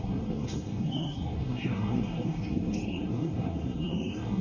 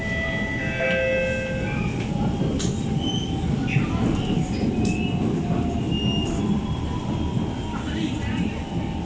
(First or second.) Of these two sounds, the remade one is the first